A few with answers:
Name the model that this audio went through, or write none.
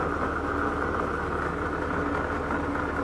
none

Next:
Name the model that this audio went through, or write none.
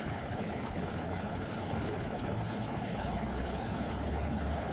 codec, HILCodec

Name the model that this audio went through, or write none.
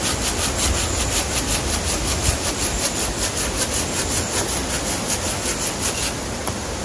none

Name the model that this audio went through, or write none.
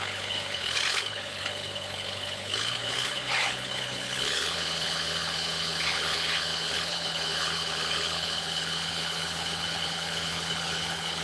codec, HILCodec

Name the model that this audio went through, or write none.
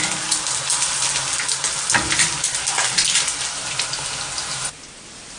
none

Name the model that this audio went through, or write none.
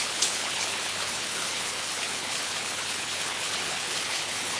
codec, HILCodec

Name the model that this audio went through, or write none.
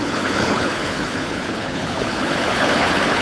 codec, HILCodec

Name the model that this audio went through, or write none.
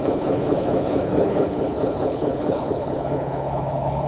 codec, HILCodec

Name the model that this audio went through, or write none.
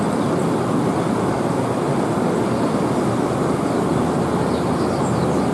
none